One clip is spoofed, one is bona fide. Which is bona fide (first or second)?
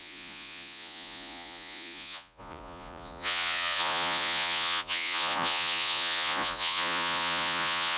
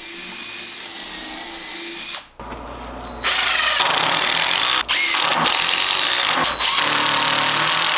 second